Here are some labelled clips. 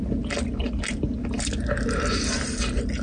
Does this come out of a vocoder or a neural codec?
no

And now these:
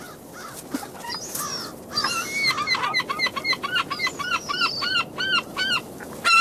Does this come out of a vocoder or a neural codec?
no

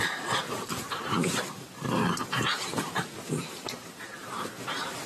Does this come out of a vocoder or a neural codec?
yes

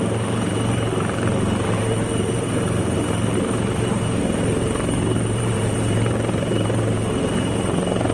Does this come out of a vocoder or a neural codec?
yes